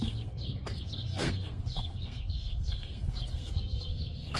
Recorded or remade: remade